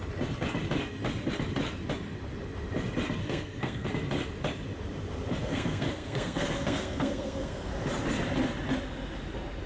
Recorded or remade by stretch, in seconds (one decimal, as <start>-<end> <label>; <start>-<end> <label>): 0.0-3.2 recorded; 3.2-3.9 remade; 3.9-5.4 recorded; 5.4-7.7 remade; 7.7-9.7 recorded